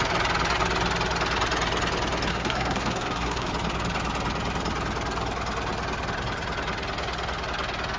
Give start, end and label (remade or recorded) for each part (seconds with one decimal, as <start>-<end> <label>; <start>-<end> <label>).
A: 0.0-2.3 recorded; 2.3-3.5 remade; 3.5-8.0 recorded